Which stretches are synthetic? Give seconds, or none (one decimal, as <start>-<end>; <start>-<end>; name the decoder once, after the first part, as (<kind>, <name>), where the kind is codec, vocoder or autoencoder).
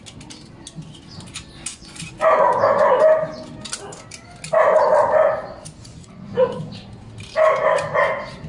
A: 1.7-2.4 (vocoder, Vocos); 5.8-6.6